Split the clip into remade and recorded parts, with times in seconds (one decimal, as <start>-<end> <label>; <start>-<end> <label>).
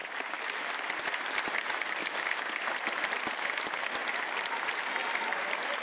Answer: 0.0-2.0 recorded; 2.0-2.6 remade; 2.6-5.8 recorded